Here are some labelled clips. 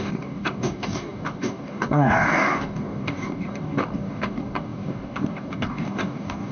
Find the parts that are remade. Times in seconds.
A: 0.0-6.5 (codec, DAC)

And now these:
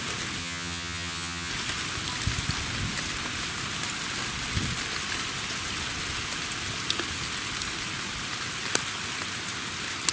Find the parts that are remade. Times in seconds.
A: 0.4-1.5 (vocoder, HiFi-GAN)

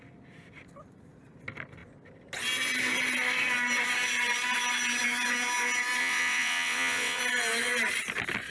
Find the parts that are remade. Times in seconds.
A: 6.0-7.2 (vocoder, WaveNeXt)

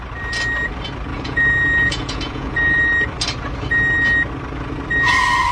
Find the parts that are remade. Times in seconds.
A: 1.1-2.8 (vocoder, Vocos)

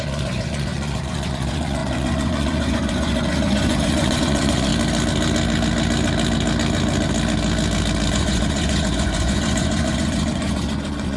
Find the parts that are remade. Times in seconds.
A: 0.0-4.7 (vocoder, Vocos); 8.1-11.2